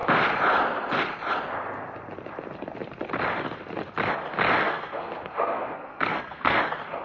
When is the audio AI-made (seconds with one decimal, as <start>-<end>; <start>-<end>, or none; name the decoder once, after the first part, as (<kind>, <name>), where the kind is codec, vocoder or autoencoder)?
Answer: 4.6-6.6 (codec, SNAC)